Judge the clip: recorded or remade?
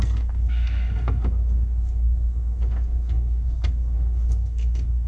remade